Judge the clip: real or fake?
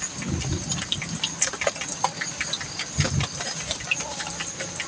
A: real